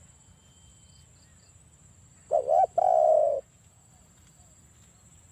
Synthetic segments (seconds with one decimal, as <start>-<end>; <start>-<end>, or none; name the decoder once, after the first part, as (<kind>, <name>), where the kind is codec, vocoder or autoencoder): 3.2-3.9 (vocoder, Vocos)